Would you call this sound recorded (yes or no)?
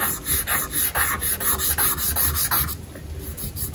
yes